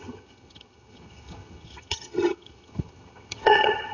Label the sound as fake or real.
fake